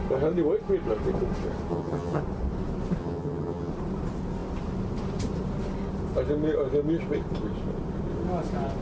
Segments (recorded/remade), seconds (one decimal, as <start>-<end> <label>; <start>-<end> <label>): 0.0-1.7 recorded; 1.7-2.2 remade; 2.2-3.0 recorded; 3.0-3.7 remade; 3.7-8.8 recorded

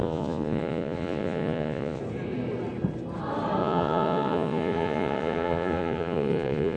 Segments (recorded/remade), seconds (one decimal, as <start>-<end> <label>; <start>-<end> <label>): 0.0-2.0 remade; 2.0-3.6 recorded; 3.6-6.8 remade

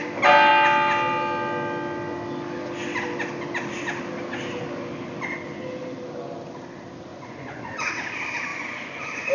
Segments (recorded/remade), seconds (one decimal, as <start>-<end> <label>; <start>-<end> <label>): 0.0-7.1 recorded; 7.1-7.9 remade; 7.9-8.5 recorded; 8.5-9.3 remade

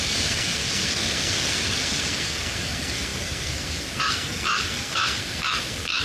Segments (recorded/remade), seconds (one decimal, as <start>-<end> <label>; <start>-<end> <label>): 0.0-6.0 remade

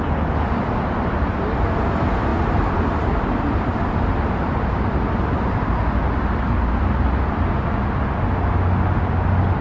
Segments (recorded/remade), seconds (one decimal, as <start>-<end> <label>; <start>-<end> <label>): 0.0-2.3 recorded; 2.3-6.7 remade; 6.7-9.6 recorded

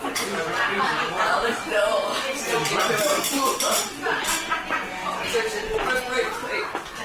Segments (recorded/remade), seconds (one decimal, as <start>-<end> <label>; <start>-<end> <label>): 0.0-2.1 recorded; 2.1-2.8 remade; 2.8-5.0 recorded; 5.0-6.0 remade; 6.0-7.0 recorded

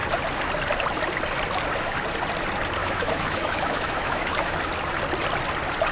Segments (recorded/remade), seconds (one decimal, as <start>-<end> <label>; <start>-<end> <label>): 0.0-2.8 recorded; 2.8-4.6 remade; 4.6-5.9 recorded